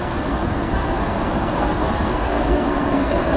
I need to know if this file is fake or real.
fake